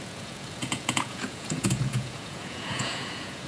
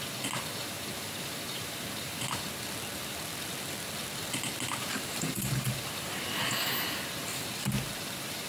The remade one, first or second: first